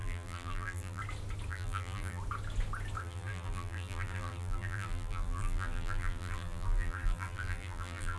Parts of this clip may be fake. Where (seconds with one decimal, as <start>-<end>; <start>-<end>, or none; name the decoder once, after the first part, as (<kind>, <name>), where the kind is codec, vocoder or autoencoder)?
0.0-1.0 (vocoder, BigVGAN v2); 1.5-2.2; 3.0-8.2